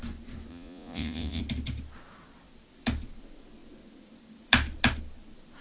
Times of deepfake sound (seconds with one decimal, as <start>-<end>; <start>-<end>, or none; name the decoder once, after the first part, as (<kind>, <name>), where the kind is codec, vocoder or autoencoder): 0.5-1.4 (vocoder, Vocos)